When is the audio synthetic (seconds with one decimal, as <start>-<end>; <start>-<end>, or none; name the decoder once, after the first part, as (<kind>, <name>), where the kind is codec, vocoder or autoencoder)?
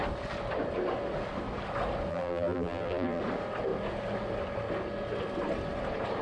2.1-3.2 (vocoder, BigVGAN v2)